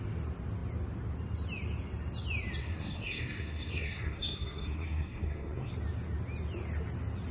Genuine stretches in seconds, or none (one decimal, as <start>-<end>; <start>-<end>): 0.0-2.6; 5.7-7.3